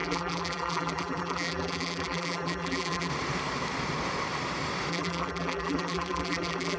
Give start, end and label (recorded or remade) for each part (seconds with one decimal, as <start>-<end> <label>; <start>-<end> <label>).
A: 0.0-3.1 remade; 3.1-4.9 recorded; 4.9-6.8 remade